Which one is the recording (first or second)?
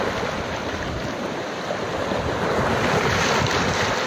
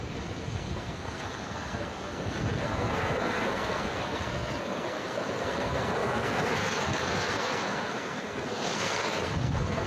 first